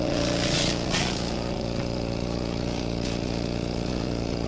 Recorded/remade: remade